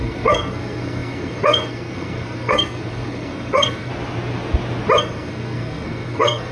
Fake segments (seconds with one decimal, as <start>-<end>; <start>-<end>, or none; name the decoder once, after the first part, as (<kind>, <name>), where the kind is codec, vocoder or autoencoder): 0.0-3.9 (codec, SNAC); 5.0-6.5